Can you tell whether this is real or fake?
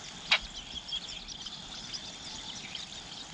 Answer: real